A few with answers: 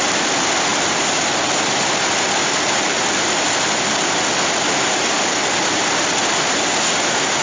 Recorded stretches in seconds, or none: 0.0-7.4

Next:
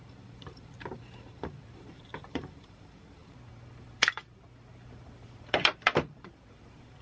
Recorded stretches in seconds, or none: none